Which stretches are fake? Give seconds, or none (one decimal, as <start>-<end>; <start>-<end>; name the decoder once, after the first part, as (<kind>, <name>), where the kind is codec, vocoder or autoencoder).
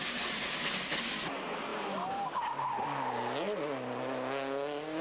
none